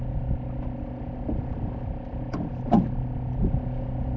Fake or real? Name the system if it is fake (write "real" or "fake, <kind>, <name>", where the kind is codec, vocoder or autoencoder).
real